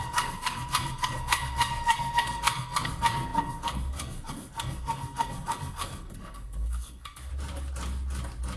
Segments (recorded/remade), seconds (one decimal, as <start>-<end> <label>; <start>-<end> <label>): 0.0-7.3 remade; 7.3-8.6 recorded